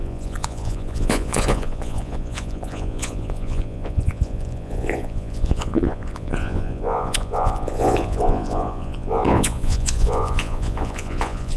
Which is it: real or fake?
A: fake